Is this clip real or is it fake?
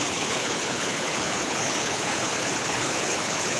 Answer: fake